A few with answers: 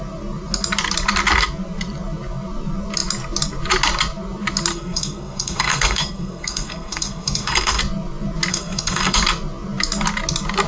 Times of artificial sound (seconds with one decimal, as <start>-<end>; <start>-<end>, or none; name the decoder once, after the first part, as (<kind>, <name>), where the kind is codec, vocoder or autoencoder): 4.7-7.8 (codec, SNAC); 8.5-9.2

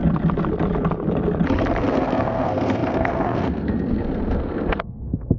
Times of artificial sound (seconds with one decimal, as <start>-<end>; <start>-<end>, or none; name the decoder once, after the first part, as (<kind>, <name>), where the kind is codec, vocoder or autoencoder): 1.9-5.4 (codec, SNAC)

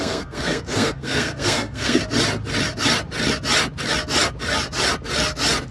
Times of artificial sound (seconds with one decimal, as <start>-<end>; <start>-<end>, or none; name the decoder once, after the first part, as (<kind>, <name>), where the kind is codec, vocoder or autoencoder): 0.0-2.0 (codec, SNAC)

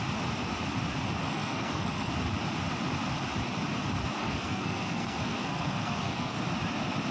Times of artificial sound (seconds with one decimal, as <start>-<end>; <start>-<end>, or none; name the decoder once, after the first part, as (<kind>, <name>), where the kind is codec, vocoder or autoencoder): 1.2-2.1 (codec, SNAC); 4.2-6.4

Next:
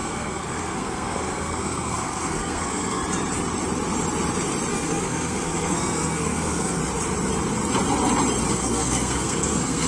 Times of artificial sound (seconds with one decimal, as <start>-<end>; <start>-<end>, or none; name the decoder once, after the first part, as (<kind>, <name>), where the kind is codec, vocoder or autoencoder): 0.0-3.0 (codec, SNAC); 4.7-6.8; 8.5-9.9

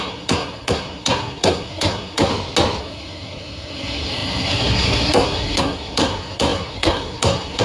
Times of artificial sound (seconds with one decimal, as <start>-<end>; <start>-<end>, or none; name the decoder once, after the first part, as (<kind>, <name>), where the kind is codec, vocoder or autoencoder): 0.0-2.3 (codec, SNAC); 2.8-7.6